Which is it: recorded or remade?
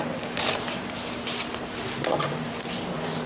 recorded